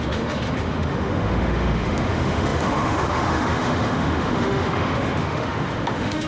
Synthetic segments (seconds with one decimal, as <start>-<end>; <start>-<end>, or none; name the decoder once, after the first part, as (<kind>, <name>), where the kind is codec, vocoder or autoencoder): 0.0-6.3 (autoencoder, DAC-VAE)